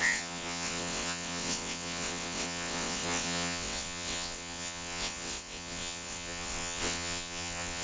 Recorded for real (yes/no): no